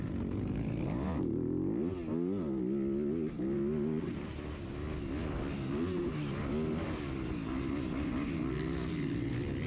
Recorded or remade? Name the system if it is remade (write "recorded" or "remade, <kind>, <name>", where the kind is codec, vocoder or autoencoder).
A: recorded